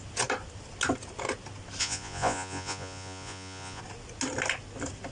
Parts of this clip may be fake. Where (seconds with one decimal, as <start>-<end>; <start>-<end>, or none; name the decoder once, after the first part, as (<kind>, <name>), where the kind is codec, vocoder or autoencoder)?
1.8-3.8 (vocoder, Vocos)